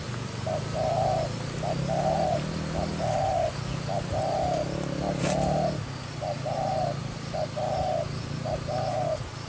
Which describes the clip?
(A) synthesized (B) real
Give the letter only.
B